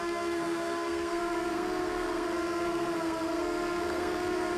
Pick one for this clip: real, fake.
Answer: fake